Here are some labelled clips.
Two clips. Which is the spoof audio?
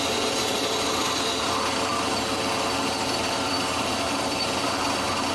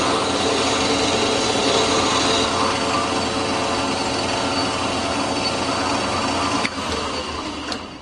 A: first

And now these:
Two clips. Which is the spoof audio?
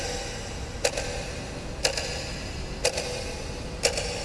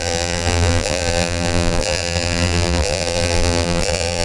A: second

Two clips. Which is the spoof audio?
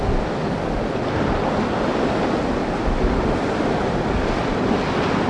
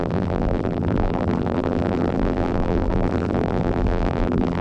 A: second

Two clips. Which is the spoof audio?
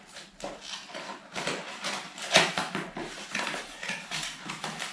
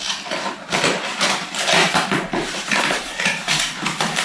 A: second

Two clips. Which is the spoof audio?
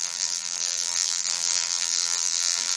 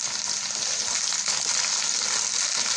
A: first